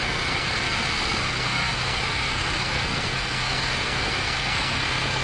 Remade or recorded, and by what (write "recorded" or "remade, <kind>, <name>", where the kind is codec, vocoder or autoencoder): remade, codec, SNAC